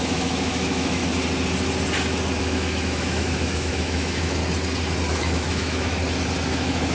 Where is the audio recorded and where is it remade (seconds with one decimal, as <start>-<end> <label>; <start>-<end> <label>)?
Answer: 0.0-1.0 remade; 1.0-2.4 recorded; 2.4-4.4 remade; 4.4-5.1 recorded; 5.1-6.0 remade; 6.0-6.5 recorded; 6.5-6.9 remade